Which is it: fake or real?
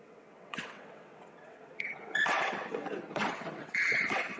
fake